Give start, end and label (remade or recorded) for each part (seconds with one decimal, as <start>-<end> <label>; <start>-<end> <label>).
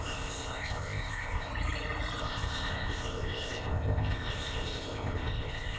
0.0-1.5 remade; 1.5-2.2 recorded; 2.2-5.8 remade